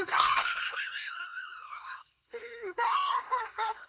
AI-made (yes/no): yes